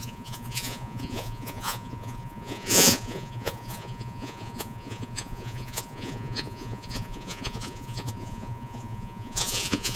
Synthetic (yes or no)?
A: yes